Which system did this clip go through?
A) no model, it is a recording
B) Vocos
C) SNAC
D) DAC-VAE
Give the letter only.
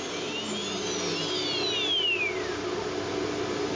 A